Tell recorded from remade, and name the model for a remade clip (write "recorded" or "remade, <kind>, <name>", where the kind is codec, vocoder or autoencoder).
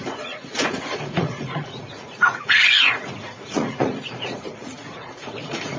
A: remade, vocoder, Vocos